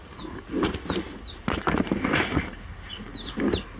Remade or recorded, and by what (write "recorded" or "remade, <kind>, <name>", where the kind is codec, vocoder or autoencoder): recorded